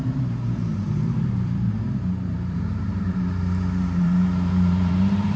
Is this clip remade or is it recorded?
remade